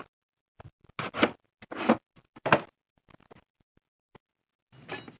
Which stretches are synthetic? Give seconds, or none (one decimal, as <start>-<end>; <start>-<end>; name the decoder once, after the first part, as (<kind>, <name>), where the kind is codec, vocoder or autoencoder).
none